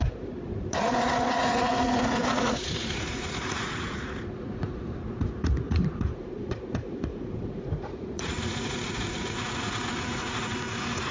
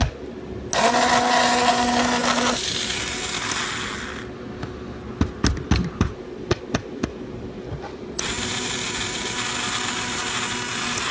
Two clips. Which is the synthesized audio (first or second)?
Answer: first